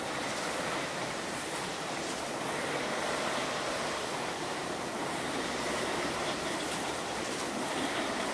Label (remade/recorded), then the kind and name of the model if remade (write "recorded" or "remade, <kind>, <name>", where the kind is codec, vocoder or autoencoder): remade, vocoder, BigVGAN v2